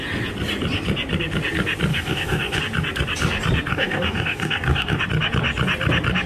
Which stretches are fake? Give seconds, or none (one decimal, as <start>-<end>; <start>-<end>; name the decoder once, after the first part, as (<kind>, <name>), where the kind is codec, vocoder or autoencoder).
1.9-2.6 (codec, DAC); 3.7-5.0

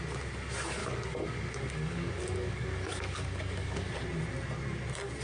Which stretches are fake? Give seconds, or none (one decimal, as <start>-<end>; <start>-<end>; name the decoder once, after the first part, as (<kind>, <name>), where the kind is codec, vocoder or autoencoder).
0.8-3.9 (codec, DAC)

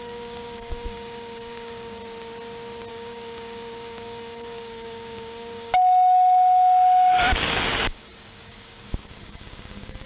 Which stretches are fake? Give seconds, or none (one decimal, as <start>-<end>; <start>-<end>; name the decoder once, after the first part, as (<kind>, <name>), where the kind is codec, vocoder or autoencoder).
0.0-2.0 (codec, DAC); 2.9-10.1